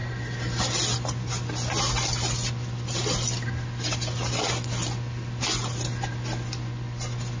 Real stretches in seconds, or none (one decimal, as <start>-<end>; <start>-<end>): 0.0-7.4